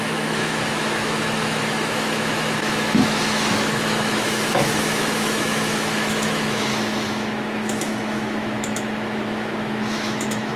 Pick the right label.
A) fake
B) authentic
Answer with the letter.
A